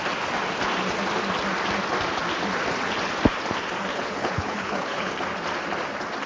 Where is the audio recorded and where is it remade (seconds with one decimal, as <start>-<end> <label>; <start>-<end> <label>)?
0.0-3.9 recorded; 3.9-5.1 remade; 5.1-6.3 recorded